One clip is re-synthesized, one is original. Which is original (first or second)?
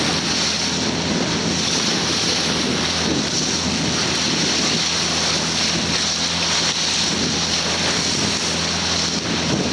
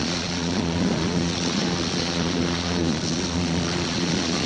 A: first